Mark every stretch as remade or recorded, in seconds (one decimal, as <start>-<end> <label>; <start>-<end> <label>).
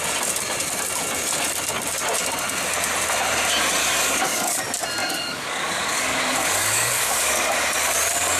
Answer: 0.0-3.8 recorded; 3.8-4.6 remade; 4.6-5.0 recorded; 5.0-7.7 remade; 7.7-8.4 recorded